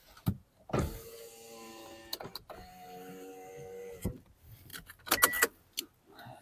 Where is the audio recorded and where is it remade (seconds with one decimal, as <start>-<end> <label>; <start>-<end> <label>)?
0.0-6.4 recorded